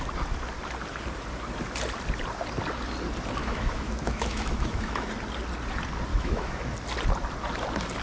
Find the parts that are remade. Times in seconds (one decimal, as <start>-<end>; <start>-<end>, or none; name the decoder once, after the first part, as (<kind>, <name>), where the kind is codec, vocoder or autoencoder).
3.4-5.1 (autoencoder, DAC-VAE); 6.1-6.6